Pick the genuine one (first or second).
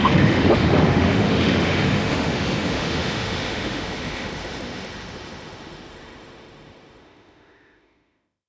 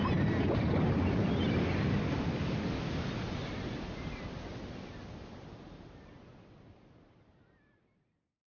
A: second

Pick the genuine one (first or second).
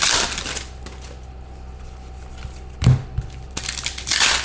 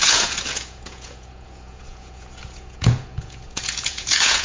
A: first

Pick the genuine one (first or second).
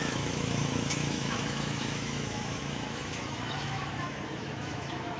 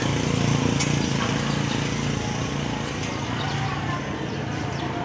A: second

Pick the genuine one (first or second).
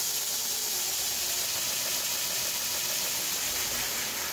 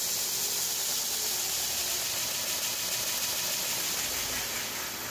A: second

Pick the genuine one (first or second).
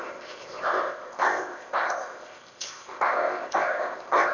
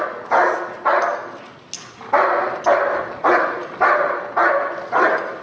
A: second